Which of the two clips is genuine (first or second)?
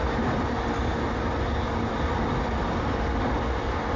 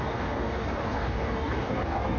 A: first